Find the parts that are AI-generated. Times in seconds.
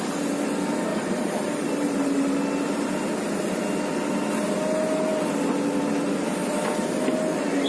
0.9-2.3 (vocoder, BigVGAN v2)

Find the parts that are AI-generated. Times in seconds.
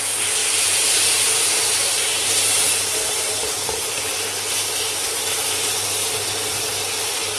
0.4-3.3 (vocoder, BigVGAN v2); 3.9-6.1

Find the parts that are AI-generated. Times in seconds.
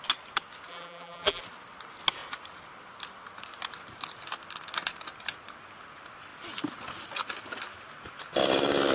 0.7-1.4 (vocoder, BigVGAN v2)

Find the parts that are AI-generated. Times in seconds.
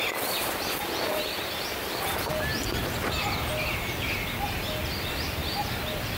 2.5-4.7 (vocoder, BigVGAN v2); 5.4-6.2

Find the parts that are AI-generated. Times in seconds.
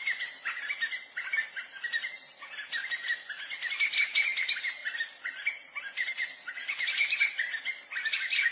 1.3-2.2 (vocoder, BigVGAN v2); 4.8-5.8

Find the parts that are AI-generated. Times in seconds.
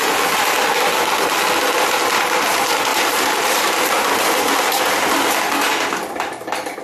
2.9-3.7 (vocoder, BigVGAN v2)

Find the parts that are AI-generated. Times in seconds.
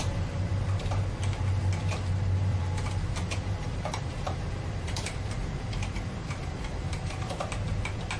2.5-7.4 (vocoder, BigVGAN v2)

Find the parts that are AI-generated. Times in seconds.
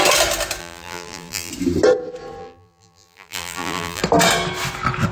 0.6-1.5 (vocoder, BigVGAN v2); 2.4-4.0